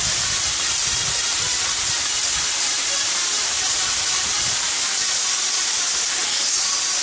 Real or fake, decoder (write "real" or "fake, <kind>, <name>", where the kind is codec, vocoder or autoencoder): real